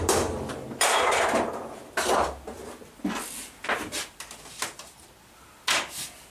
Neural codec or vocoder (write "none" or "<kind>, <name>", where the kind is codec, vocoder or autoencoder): none